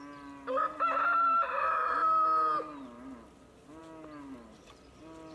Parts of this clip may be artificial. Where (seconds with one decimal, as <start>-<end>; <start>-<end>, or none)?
none